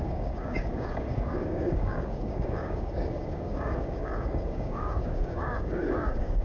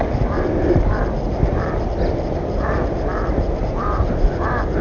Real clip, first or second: second